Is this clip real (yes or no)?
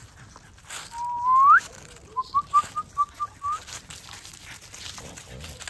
yes